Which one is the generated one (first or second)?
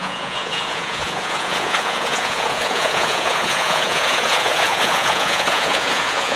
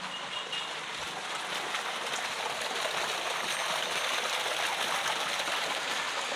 first